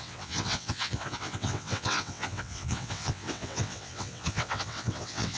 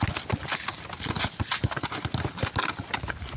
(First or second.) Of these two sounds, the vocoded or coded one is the first